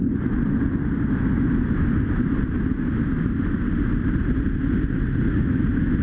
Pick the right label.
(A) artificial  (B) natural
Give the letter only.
B